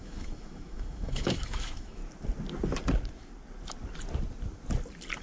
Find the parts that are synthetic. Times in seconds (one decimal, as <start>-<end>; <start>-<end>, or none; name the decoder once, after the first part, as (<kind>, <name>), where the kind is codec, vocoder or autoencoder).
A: 0.0-2.0 (autoencoder, DAC-VAE)

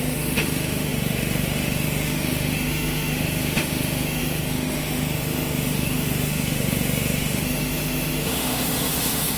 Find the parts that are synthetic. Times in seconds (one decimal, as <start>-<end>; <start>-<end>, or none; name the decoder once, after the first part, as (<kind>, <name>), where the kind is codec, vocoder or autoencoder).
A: 0.0-9.4 (autoencoder, DAC-VAE)